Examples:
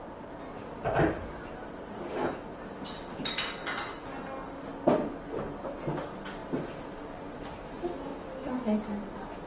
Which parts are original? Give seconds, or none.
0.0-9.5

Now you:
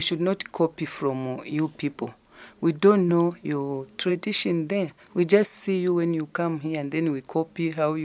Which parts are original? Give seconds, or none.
0.0-8.0

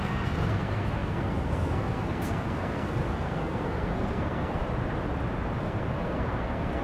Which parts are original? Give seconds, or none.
4.6-5.6

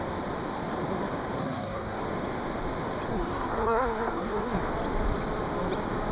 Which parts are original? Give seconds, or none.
0.0-1.4; 2.0-3.1; 4.6-6.1

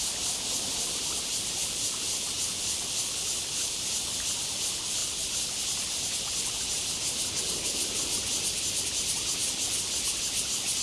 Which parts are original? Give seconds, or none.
0.0-10.8

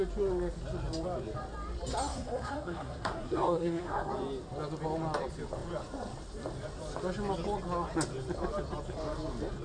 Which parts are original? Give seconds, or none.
0.0-2.1; 4.1-9.6

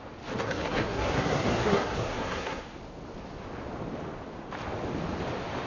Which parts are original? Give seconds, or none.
0.0-0.4; 2.6-5.7